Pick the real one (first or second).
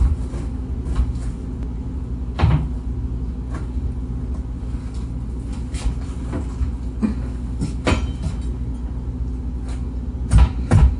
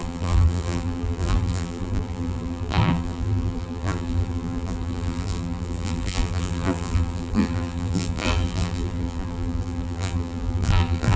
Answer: first